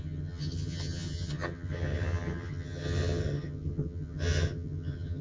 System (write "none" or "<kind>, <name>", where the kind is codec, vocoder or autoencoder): vocoder, HiFi-GAN